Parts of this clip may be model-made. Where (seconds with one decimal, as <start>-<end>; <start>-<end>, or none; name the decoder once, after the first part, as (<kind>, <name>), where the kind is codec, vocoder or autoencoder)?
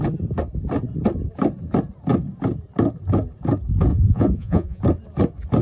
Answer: 3.9-4.8 (vocoder, Vocos)